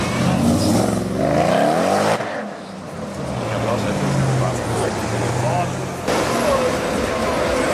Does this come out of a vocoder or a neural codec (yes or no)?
no